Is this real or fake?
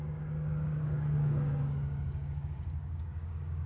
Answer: fake